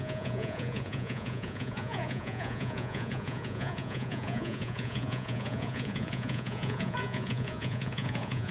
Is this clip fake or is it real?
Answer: fake